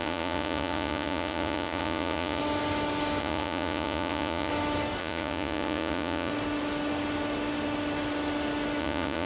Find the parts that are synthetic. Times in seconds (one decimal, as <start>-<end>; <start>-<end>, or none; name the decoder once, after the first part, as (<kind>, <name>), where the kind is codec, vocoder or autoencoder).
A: 0.0-2.4 (vocoder, Vocos); 3.2-4.5; 5.0-6.3; 8.8-9.3